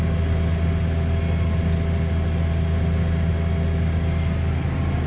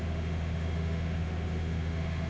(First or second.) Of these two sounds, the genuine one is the first